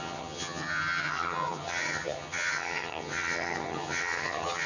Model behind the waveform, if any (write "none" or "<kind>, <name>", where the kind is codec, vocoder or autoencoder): vocoder, HiFi-GAN